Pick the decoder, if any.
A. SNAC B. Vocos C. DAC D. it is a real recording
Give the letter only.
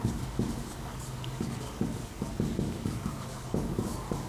C